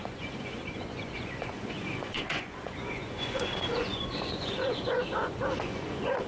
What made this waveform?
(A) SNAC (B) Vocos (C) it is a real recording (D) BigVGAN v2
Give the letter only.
B